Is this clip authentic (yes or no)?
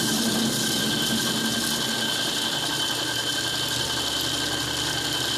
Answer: yes